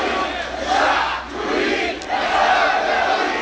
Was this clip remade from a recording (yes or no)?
no